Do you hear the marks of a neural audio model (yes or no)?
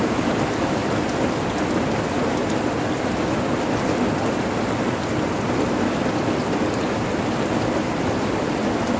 no